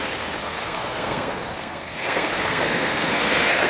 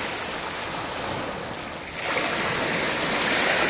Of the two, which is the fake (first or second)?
first